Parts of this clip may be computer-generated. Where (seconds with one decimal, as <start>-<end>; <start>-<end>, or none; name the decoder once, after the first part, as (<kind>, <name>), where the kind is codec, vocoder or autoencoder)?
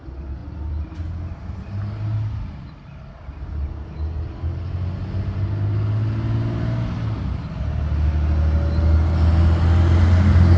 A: none